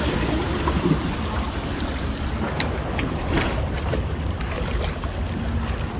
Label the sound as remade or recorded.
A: recorded